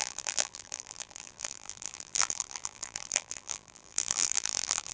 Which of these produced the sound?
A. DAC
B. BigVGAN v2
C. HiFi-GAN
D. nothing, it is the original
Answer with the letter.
B